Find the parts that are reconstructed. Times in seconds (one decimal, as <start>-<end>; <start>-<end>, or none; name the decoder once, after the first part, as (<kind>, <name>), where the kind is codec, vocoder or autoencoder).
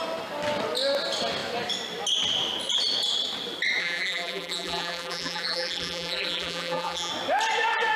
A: 3.8-7.1 (vocoder, BigVGAN v2)